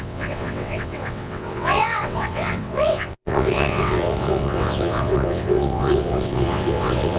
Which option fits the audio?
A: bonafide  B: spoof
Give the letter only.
B